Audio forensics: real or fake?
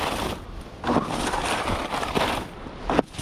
real